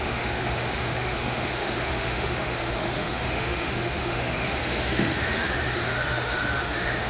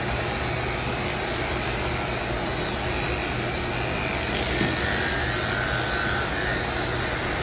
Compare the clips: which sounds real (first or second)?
second